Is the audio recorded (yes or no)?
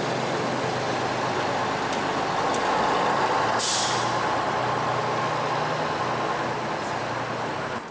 yes